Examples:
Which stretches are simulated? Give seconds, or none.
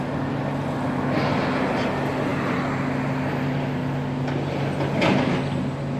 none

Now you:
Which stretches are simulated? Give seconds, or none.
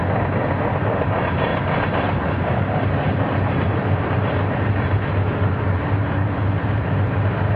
0.7-1.5; 2.2-7.6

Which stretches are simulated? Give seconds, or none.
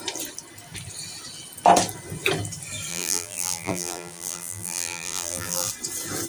2.9-5.7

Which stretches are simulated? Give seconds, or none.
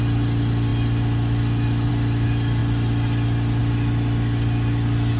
none